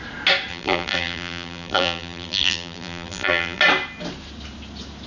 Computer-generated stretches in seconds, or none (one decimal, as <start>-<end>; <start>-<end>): 0.5-3.6

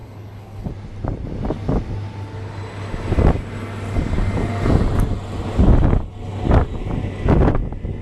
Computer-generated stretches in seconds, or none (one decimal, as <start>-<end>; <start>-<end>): 0.0-0.7

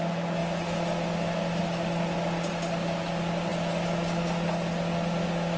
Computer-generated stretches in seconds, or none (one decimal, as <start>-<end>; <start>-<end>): none

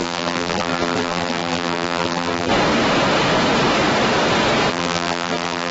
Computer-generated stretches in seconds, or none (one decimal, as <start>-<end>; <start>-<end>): 0.0-2.5; 4.7-5.7

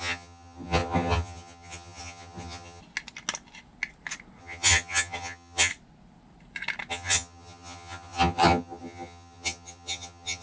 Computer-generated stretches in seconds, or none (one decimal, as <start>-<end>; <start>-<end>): 0.0-2.8; 4.4-5.7; 6.9-10.4

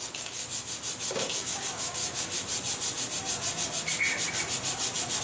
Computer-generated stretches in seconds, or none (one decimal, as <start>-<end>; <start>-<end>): 0.0-0.4; 1.1-2.0